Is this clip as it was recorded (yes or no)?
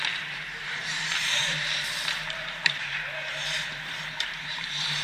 no